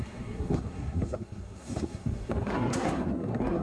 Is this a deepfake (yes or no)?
yes